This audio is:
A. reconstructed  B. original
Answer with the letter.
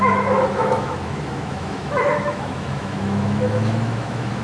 A